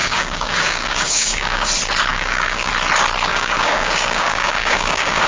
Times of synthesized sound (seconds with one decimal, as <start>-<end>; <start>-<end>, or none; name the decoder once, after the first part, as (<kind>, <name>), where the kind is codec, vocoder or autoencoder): 0.0-1.7 (codec, DAC); 2.1-2.7; 3.3-5.3